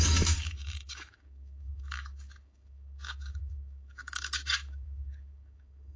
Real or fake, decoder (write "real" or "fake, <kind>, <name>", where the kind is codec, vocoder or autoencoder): fake, codec, DAC